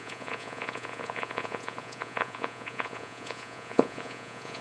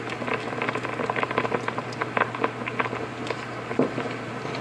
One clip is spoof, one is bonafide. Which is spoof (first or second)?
first